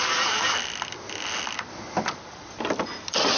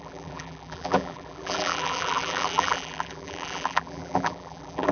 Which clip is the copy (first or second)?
second